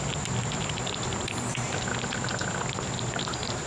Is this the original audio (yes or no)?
yes